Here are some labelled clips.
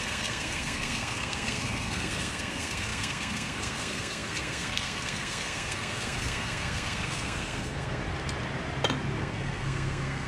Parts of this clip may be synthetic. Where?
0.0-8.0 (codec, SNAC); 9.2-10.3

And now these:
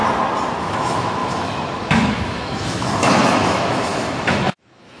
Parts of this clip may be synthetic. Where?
0.6-5.0 (autoencoder, DAC-VAE)